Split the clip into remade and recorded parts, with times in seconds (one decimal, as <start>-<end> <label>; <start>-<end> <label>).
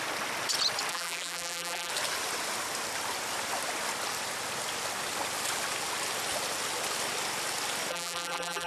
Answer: 0.0-0.9 recorded; 0.9-1.9 remade; 1.9-7.9 recorded; 7.9-8.7 remade